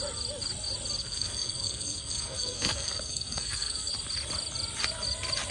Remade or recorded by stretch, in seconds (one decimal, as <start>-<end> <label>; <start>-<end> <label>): 0.0-1.0 recorded; 1.0-3.9 remade; 3.9-5.5 recorded